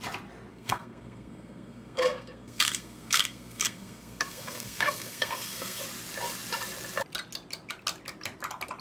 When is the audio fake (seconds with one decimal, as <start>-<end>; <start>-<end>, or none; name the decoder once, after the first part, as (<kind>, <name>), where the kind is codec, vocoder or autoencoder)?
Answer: 0.5-5.8 (codec, SNAC)